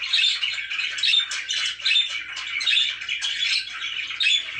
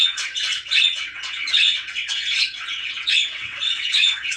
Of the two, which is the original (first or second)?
first